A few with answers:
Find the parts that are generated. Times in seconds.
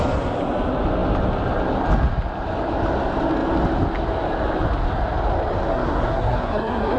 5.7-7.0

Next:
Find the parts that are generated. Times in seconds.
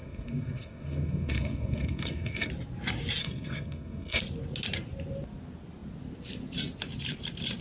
0.0-2.5; 3.2-4.2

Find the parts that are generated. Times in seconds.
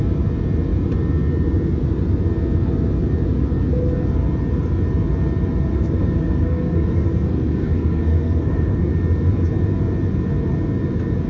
5.7-8.9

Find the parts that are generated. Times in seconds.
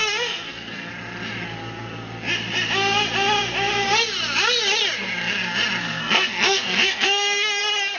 0.0-0.9; 5.8-7.6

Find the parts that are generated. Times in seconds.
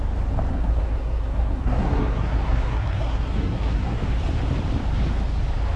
0.5-4.0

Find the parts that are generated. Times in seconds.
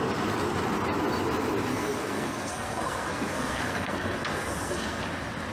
1.7-5.0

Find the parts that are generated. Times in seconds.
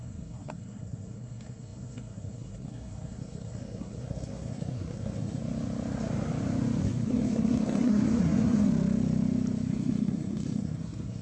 0.0-5.4; 6.8-8.7; 9.7-11.2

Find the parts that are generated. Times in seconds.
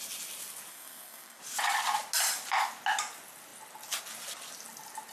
0.7-1.4